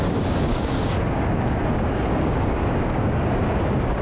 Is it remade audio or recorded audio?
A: remade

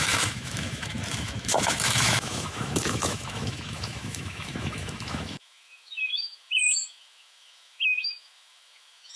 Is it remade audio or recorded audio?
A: remade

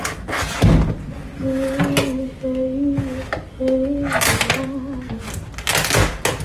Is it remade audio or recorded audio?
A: recorded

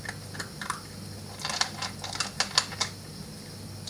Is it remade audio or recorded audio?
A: recorded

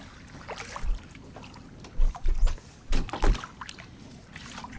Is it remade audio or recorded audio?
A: recorded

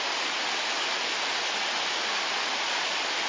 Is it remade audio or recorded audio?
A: recorded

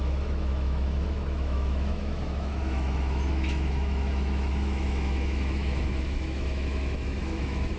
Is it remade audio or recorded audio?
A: remade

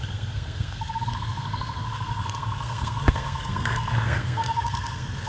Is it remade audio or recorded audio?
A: remade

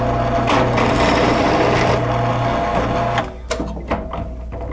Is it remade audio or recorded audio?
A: recorded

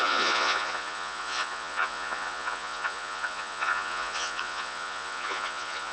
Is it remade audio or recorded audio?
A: remade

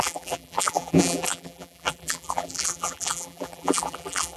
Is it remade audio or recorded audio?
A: remade